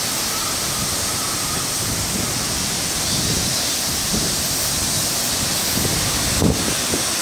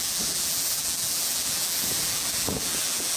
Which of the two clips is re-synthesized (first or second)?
second